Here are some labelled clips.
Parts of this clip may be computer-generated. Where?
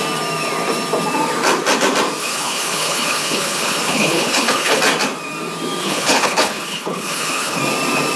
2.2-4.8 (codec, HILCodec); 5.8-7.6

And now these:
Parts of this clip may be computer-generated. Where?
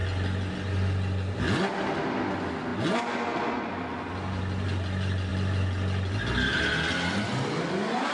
none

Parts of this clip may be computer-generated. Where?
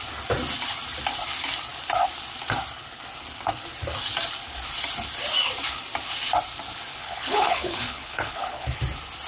6.9-8.8 (codec, HILCodec)